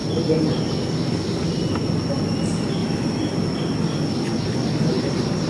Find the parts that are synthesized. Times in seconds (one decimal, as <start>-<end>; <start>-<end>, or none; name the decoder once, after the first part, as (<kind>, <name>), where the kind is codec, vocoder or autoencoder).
none